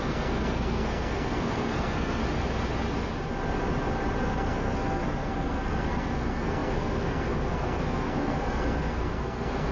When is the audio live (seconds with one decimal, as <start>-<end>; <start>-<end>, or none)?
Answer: 2.2-4.2